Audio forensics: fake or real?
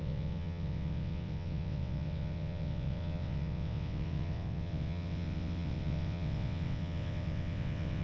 fake